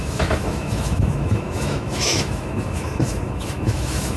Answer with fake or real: fake